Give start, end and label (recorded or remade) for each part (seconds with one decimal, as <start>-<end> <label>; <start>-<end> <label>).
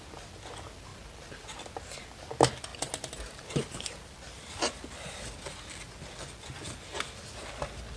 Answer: 0.0-8.0 recorded